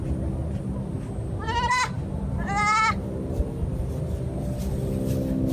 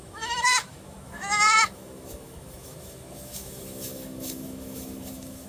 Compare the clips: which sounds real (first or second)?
first